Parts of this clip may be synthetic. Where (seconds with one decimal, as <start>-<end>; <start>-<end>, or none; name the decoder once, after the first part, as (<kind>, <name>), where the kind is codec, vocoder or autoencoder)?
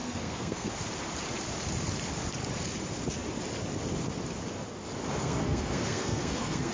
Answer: 0.0-0.7 (codec, SNAC); 5.2-6.7